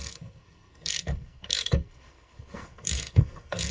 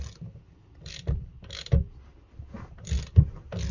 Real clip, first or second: second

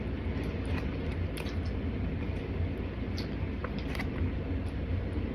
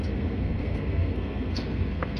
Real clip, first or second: first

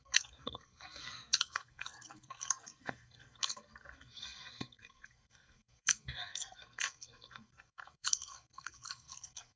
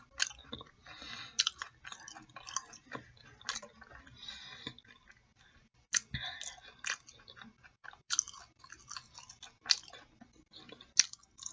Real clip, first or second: second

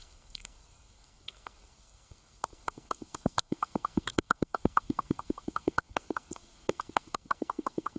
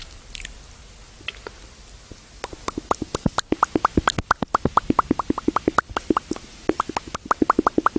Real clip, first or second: second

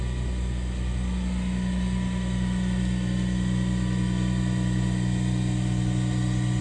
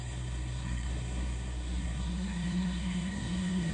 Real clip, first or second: first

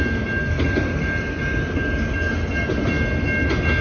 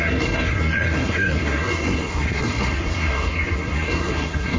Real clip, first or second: first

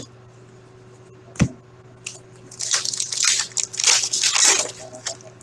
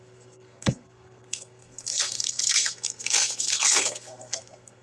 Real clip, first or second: first